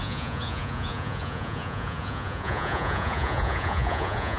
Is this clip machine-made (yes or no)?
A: yes